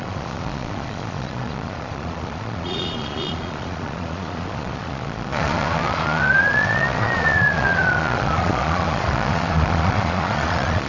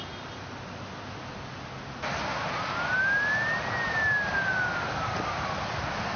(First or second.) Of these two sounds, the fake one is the first